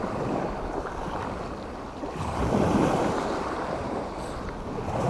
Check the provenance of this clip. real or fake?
fake